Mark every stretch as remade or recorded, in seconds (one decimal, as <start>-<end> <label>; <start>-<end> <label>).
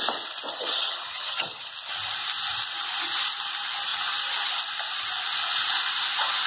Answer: 0.0-0.5 recorded; 0.5-1.7 remade; 1.7-6.5 recorded